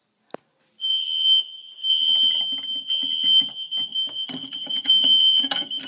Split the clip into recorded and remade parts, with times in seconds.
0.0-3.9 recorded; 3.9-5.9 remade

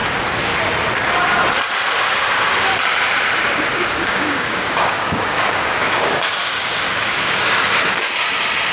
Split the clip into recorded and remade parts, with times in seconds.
0.0-3.7 recorded; 3.7-8.1 remade; 8.1-8.7 recorded

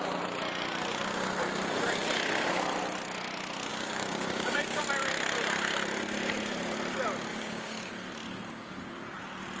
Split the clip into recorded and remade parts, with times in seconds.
0.0-3.7 recorded; 3.7-4.8 remade; 4.8-7.3 recorded; 7.3-7.9 remade; 7.9-9.6 recorded